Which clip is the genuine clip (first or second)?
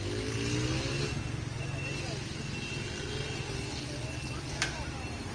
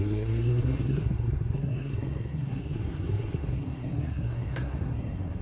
first